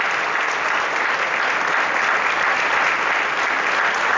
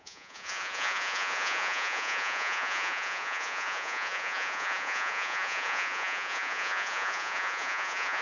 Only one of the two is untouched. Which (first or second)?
first